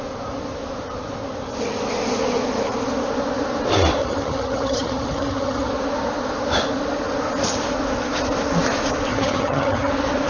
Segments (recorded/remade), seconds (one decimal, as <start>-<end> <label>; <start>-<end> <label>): 0.0-4.0 recorded; 4.0-5.7 remade; 5.7-9.1 recorded; 9.1-9.9 remade; 9.9-10.3 recorded